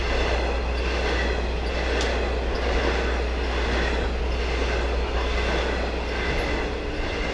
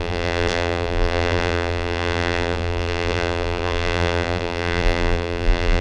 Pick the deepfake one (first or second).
second